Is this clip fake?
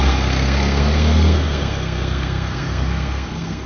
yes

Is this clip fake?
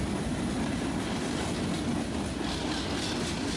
no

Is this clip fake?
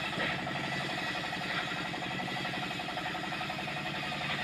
no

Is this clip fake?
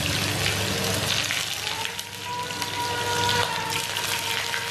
no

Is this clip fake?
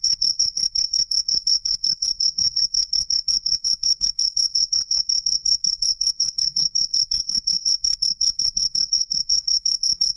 yes